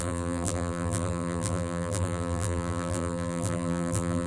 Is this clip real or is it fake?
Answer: fake